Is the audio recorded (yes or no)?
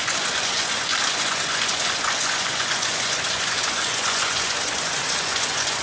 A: no